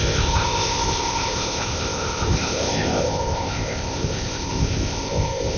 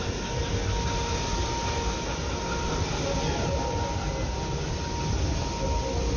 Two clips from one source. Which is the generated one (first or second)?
first